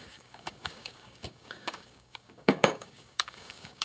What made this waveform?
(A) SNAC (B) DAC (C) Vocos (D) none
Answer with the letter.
B